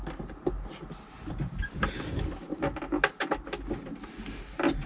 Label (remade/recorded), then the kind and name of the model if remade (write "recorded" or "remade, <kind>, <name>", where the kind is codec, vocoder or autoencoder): recorded